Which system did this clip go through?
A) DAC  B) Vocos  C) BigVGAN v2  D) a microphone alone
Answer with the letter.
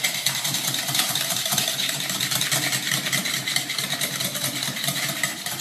C